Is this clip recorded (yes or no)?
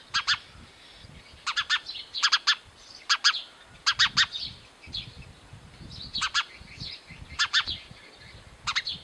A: yes